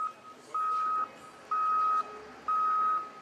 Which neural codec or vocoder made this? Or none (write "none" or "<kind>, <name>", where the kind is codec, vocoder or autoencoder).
none